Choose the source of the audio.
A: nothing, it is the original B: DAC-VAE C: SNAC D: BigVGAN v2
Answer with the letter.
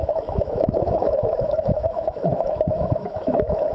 B